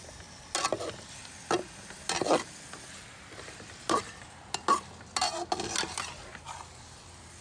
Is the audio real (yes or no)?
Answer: yes